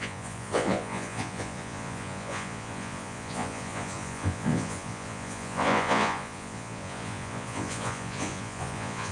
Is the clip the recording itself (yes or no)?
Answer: no